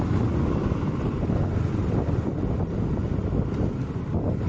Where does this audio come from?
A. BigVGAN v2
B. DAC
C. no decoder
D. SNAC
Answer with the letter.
C